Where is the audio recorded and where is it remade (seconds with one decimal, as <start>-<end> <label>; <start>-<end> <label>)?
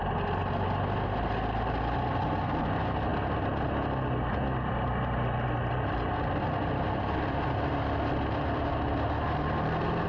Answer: 0.0-10.1 recorded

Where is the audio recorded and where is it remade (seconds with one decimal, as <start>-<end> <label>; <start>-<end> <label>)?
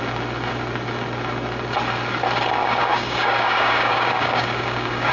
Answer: 0.0-2.6 recorded; 2.6-5.1 remade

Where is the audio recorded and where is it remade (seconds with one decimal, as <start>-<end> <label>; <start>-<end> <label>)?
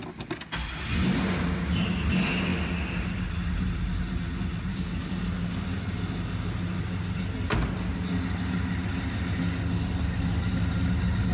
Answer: 0.0-4.7 recorded; 4.7-5.6 remade; 5.6-11.3 recorded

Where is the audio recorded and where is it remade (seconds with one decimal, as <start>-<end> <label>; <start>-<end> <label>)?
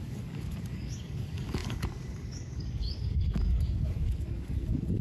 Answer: 0.0-5.0 remade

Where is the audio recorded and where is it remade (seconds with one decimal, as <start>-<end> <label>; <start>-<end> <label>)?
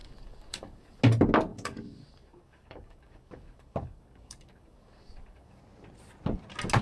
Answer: 0.0-1.0 remade; 1.0-1.5 recorded; 1.5-5.6 remade; 5.6-6.8 recorded